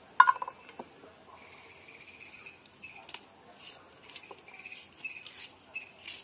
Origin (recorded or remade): recorded